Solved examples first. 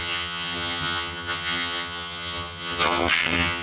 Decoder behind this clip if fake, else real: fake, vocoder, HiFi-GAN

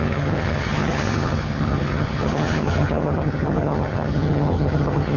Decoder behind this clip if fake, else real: fake, vocoder, HiFi-GAN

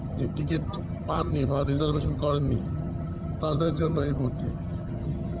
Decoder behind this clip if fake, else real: fake, vocoder, HiFi-GAN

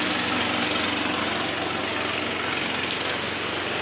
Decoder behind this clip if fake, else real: real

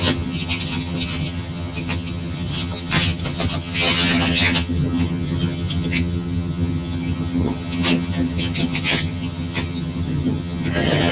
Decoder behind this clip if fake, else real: fake, vocoder, HiFi-GAN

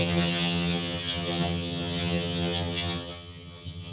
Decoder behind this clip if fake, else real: fake, vocoder, HiFi-GAN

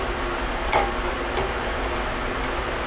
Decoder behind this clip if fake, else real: real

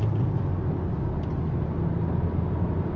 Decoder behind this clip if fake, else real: real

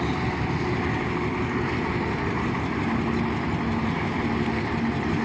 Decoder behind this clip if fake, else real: real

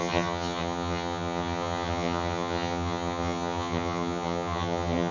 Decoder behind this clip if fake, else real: fake, vocoder, HiFi-GAN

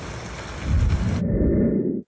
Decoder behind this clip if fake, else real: real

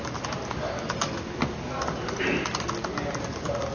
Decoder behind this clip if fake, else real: real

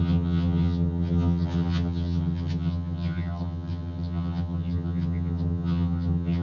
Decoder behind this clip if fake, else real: fake, vocoder, HiFi-GAN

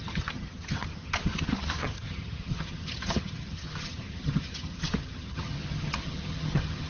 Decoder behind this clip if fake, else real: fake, vocoder, HiFi-GAN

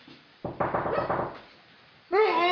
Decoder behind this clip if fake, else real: real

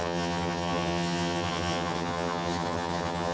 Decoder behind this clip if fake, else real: fake, vocoder, HiFi-GAN